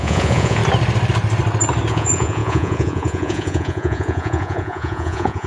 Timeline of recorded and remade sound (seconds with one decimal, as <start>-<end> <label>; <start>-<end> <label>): 0.0-0.6 remade; 0.6-1.9 recorded; 1.9-5.5 remade

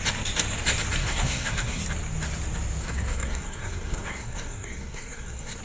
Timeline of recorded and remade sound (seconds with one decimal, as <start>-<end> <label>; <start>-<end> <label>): 0.0-1.0 recorded; 1.0-1.8 remade; 1.8-2.8 recorded; 2.8-5.6 remade

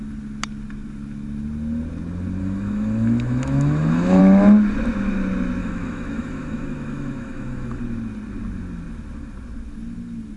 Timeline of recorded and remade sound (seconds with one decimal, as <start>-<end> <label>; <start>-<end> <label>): 0.0-2.4 recorded; 2.4-4.2 remade; 4.2-5.6 recorded; 5.6-7.8 remade; 7.8-10.4 recorded

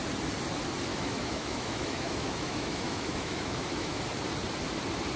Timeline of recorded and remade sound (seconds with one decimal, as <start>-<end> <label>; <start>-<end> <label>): 0.0-0.9 recorded; 0.9-4.0 remade; 4.0-5.2 recorded